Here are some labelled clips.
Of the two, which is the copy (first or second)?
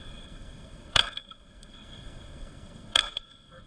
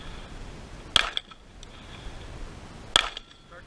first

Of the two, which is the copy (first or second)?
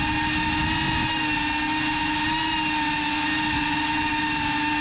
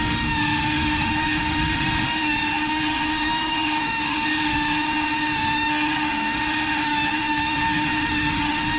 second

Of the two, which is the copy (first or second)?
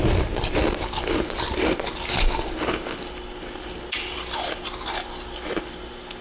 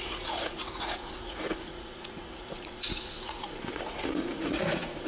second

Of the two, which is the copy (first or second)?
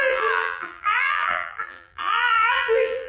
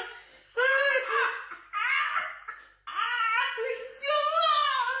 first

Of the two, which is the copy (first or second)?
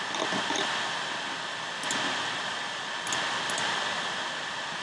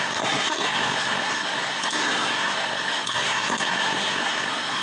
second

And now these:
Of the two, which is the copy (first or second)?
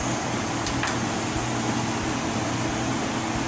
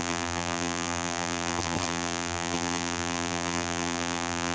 second